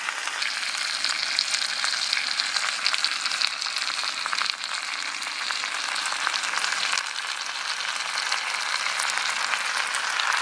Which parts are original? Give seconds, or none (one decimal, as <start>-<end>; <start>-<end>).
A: 0.0-10.4